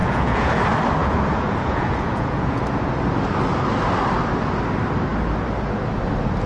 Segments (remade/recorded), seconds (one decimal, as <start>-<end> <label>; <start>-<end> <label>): 0.0-0.5 remade; 0.5-1.0 recorded; 1.0-2.6 remade; 2.6-6.5 recorded

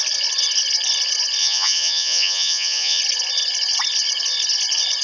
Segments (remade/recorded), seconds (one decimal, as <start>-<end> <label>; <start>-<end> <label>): 0.0-1.4 recorded; 1.4-3.0 remade; 3.0-5.0 recorded

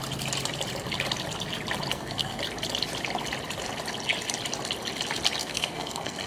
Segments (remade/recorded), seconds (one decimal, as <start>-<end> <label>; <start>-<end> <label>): 0.0-1.9 recorded; 1.9-2.4 remade; 2.4-5.4 recorded; 5.4-6.3 remade

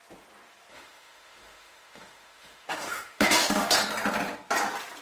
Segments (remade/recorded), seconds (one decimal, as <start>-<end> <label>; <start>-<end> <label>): 0.0-0.7 recorded; 0.7-3.7 remade; 3.7-5.0 recorded

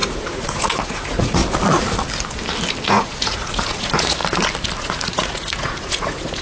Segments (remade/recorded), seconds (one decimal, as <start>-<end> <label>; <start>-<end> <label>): 0.0-1.4 remade; 1.4-2.9 recorded; 2.9-4.2 remade; 4.2-4.8 recorded; 4.8-6.4 remade

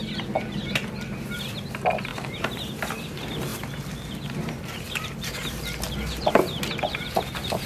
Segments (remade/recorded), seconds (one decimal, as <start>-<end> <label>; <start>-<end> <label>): 0.0-2.1 recorded; 2.1-3.0 remade; 3.0-3.5 recorded; 3.5-6.3 remade; 6.3-7.7 recorded